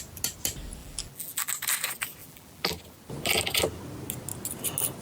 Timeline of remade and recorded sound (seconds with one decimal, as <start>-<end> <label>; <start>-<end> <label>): 0.0-0.8 recorded; 0.8-1.5 remade; 1.5-2.2 recorded; 2.2-2.7 remade; 2.7-5.0 recorded